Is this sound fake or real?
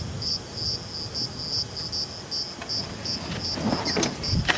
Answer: real